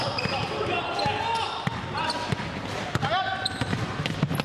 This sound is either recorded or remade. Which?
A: recorded